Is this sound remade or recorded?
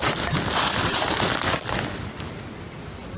recorded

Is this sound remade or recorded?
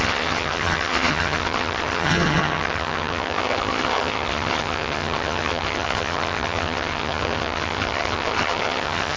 remade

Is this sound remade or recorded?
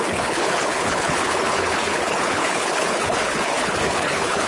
remade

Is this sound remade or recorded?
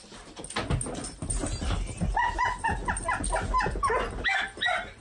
recorded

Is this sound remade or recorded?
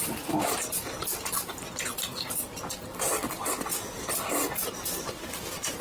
recorded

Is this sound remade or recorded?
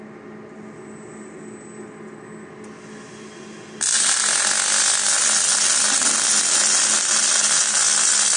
recorded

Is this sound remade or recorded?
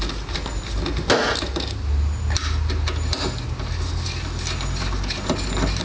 recorded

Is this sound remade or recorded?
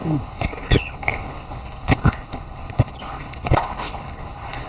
remade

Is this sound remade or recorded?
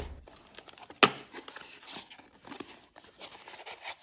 recorded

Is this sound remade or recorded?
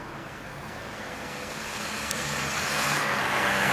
remade